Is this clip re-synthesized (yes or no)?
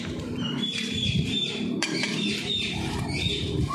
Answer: yes